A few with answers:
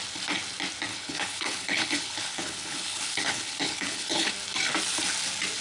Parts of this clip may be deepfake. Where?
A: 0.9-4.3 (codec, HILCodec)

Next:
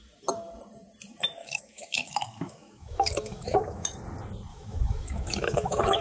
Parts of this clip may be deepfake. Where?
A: 1.4-4.0 (autoencoder, DAC-VAE); 4.5-6.0

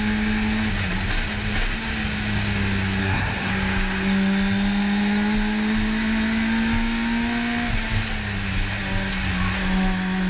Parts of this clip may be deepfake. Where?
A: 3.0-3.5 (codec, SNAC)

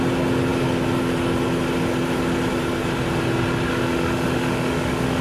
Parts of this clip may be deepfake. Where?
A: 3.7-5.2 (autoencoder, DAC-VAE)

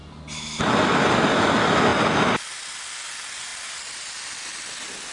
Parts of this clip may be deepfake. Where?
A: none